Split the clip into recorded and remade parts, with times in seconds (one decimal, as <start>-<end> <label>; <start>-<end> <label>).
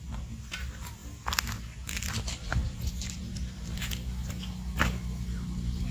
0.0-2.6 recorded; 2.6-3.6 remade; 3.6-5.9 recorded